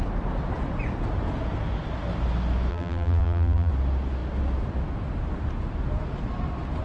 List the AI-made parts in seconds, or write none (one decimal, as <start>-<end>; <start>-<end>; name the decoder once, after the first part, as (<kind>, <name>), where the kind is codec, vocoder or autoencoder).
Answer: 2.7-3.7 (vocoder, BigVGAN v2)